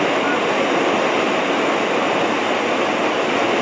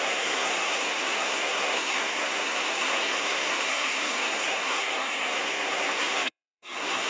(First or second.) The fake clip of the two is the second